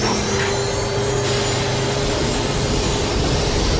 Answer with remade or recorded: recorded